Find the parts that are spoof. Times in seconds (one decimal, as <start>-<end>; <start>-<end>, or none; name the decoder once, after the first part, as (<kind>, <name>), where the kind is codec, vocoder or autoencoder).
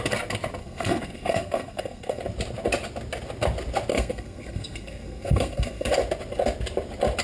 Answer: 0.6-2.2 (codec, SNAC); 3.9-5.9